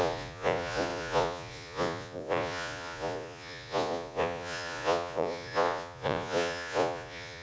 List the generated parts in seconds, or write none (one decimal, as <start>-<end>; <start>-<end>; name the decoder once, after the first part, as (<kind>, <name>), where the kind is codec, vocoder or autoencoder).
0.0-7.4 (vocoder, Vocos)